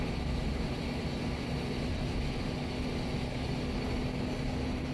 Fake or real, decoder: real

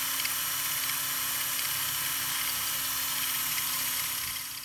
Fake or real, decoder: real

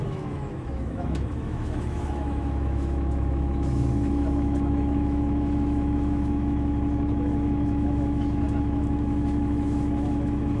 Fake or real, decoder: fake, autoencoder, DAC-VAE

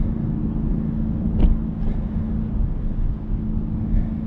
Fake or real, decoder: real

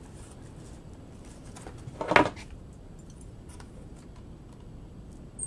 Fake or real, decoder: real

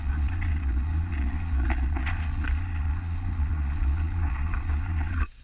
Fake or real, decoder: fake, vocoder, Vocos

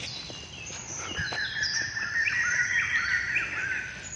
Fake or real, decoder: real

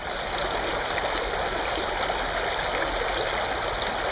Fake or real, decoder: real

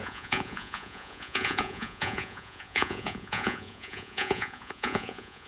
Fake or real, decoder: fake, vocoder, Vocos